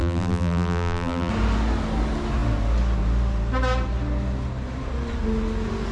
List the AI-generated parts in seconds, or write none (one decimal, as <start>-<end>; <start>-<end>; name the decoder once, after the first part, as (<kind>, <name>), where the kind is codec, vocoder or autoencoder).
0.0-1.3 (vocoder, BigVGAN v2)